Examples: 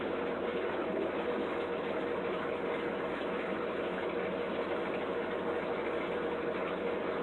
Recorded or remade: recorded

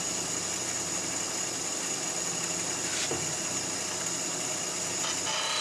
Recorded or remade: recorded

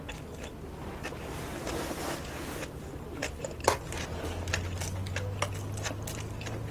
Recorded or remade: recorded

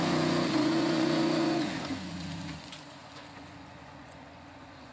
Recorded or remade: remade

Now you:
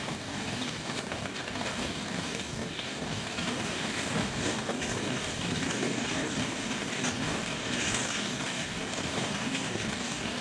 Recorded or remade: remade